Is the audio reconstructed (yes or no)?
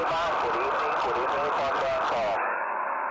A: no